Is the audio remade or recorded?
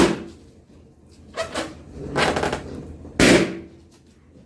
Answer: recorded